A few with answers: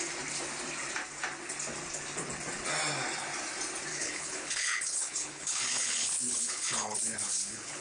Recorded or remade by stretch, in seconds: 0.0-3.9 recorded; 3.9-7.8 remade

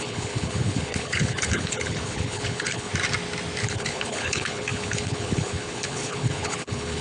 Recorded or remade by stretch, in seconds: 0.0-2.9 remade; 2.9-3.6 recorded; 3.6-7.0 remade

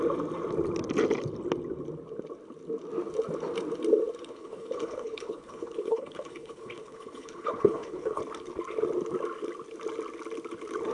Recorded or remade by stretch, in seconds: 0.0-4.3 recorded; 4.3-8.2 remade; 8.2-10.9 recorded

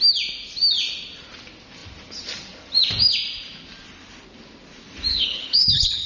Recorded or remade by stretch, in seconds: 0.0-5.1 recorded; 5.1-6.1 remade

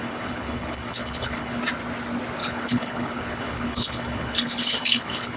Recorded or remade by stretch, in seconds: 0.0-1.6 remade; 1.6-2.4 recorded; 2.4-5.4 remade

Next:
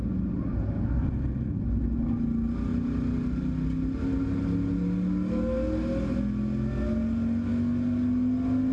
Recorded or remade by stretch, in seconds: 0.0-8.7 recorded

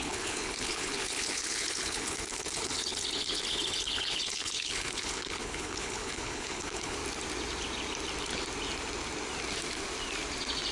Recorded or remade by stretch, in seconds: 0.0-7.0 remade; 7.0-10.7 recorded

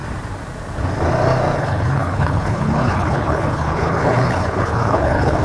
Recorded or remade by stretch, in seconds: 0.0-1.6 recorded; 1.6-5.4 remade